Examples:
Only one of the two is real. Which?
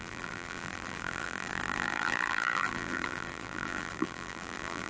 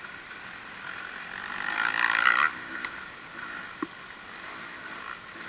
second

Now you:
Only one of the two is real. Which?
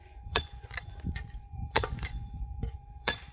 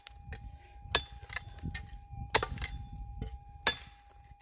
second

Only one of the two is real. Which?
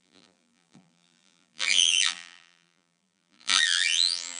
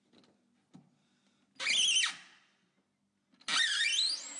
second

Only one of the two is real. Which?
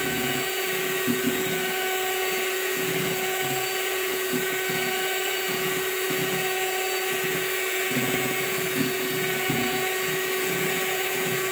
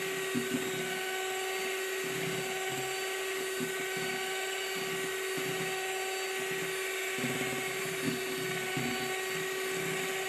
second